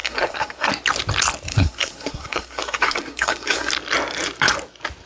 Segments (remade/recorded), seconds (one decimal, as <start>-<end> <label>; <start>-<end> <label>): 0.0-0.7 remade; 0.7-1.5 recorded; 1.5-3.7 remade; 3.7-5.1 recorded